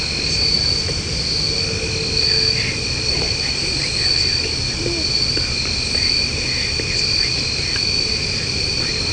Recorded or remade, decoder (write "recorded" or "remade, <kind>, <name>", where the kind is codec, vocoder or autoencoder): recorded